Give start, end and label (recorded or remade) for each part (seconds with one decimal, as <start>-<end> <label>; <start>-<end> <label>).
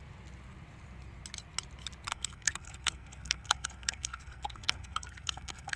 0.0-2.1 recorded; 2.1-5.8 remade